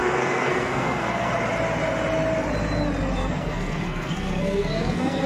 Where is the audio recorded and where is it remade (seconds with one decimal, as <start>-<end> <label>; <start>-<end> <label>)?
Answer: 0.0-1.3 remade; 1.3-3.2 recorded; 3.2-5.3 remade